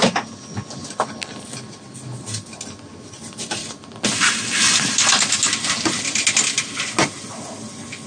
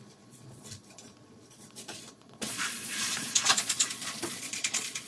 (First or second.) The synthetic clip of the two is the second